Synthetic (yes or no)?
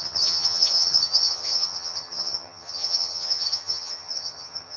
yes